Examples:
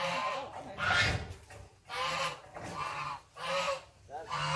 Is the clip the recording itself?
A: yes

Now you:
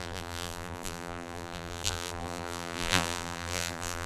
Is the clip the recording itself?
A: no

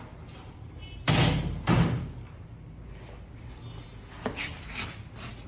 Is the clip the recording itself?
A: yes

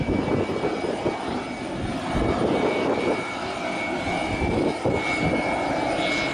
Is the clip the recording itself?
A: yes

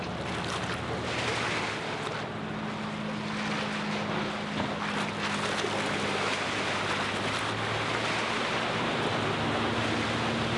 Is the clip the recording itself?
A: yes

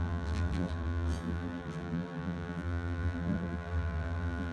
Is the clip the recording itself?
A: no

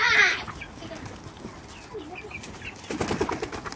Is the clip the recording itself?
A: yes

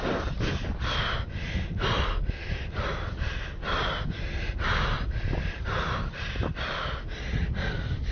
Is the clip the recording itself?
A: no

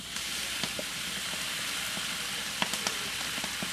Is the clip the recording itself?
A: no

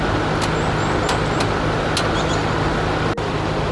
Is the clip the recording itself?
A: yes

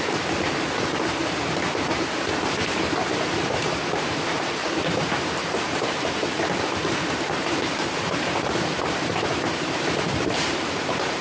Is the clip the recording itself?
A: no